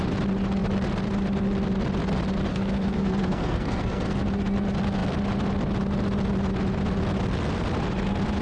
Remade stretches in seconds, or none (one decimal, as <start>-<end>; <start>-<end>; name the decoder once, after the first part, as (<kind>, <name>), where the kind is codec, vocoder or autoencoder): 2.5-4.2 (codec, SNAC)